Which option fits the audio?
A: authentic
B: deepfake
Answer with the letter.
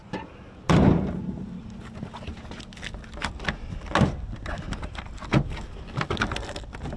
A